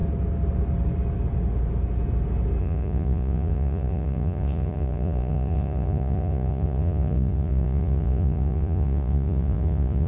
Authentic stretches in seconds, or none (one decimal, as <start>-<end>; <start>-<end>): 0.0-2.6